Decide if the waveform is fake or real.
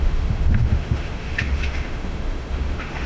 fake